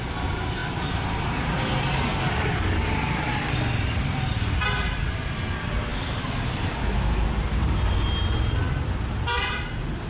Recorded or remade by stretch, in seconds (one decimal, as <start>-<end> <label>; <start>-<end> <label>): 0.0-10.1 recorded